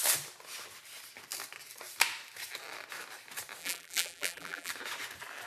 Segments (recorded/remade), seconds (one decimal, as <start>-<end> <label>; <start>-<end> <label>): 0.0-3.6 recorded; 3.6-4.7 remade; 4.7-5.5 recorded